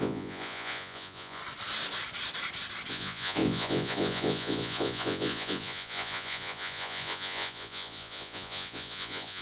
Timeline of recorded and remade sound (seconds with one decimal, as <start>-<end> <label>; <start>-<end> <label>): 0.0-1.4 remade; 1.4-2.9 recorded; 2.9-9.4 remade

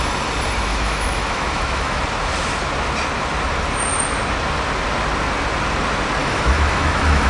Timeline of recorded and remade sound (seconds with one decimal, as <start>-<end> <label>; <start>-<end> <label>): 0.0-0.7 recorded; 0.7-2.0 remade; 2.0-6.2 recorded; 6.2-7.3 remade

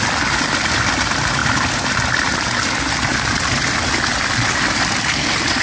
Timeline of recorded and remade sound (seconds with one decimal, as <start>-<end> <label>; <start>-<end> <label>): 0.0-5.6 recorded

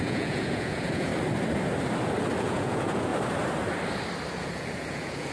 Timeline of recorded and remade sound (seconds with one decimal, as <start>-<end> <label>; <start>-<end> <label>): 0.0-1.1 remade; 1.1-2.4 recorded; 2.4-3.1 remade; 3.1-4.3 recorded; 4.3-5.3 remade

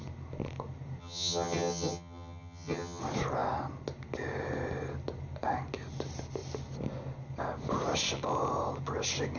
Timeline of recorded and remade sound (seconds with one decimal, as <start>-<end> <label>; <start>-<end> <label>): 0.0-1.0 recorded; 1.0-3.0 remade; 3.0-9.4 recorded

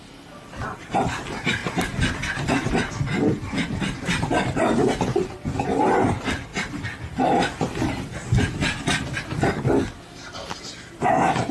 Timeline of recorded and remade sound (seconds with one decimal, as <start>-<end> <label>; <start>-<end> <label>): 0.0-11.5 recorded